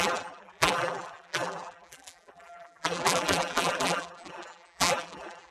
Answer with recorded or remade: remade